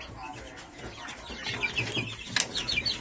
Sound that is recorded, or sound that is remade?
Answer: recorded